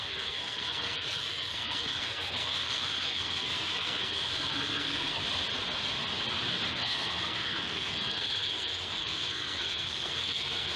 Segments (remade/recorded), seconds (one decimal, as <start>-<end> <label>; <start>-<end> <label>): 0.0-5.2 remade; 5.2-6.7 recorded; 6.7-10.8 remade